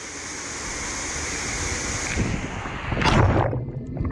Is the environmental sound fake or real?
real